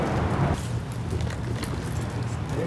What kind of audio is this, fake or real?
real